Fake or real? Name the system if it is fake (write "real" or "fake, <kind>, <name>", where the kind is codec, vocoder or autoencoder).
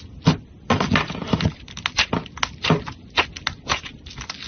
real